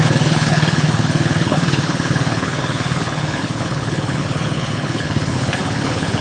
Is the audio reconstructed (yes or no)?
yes